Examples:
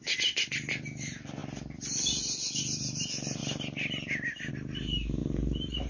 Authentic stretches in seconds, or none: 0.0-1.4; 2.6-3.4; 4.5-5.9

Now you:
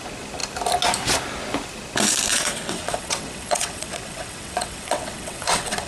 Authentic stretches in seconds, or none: 0.0-2.3

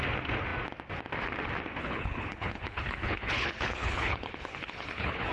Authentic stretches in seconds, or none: 0.0-1.8

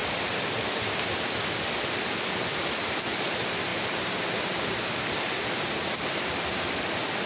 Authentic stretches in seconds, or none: 0.0-7.3